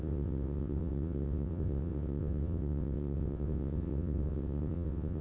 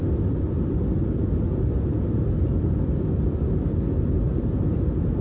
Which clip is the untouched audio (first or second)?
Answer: second